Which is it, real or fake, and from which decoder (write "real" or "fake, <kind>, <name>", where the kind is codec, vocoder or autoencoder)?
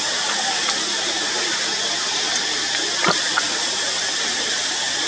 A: real